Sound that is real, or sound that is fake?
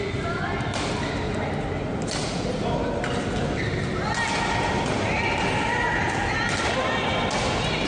real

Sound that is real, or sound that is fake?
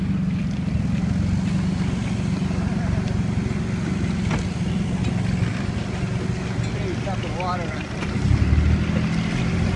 real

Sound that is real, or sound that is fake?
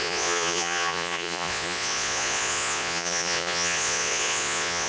fake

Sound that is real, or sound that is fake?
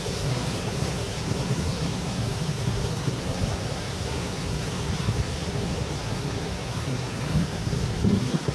fake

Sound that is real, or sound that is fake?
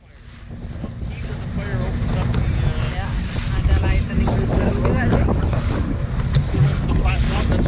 real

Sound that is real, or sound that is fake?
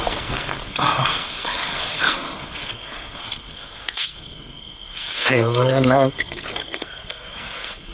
fake